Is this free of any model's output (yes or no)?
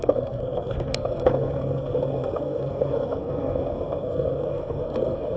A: no